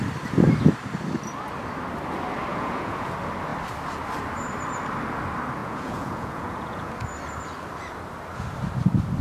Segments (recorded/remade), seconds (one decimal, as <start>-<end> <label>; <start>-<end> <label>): 0.0-2.5 recorded; 2.5-3.1 remade; 3.1-5.6 recorded; 5.6-6.9 remade; 6.9-9.2 recorded